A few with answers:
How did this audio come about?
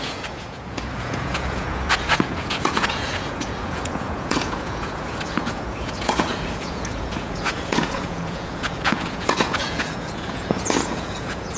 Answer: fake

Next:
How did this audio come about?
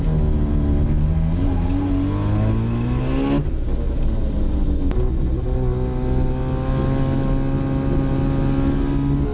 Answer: real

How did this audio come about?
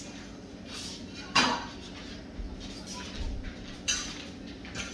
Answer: real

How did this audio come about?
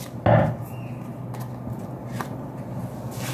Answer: real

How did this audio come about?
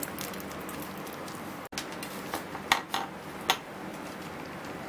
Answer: real